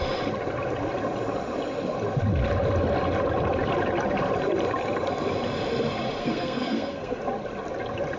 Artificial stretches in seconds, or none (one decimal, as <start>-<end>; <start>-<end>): 6.2-7.2